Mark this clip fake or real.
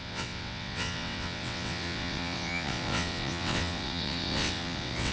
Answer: fake